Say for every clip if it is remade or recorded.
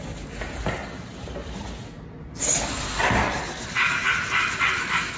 recorded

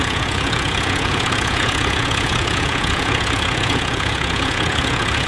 remade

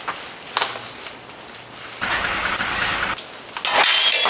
recorded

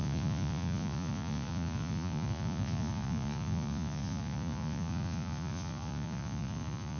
remade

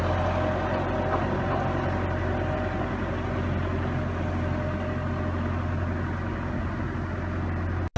recorded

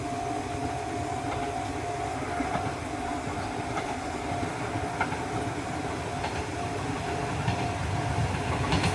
recorded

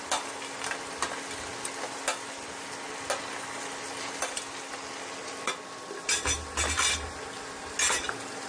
recorded